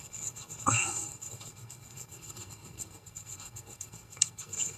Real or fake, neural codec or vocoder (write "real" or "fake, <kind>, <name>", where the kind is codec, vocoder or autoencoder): fake, codec, SNAC